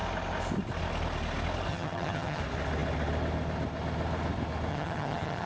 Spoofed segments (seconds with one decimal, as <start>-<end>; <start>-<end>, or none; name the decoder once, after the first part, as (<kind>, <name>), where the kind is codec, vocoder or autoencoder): 1.7-2.4 (vocoder, HiFi-GAN); 4.7-5.5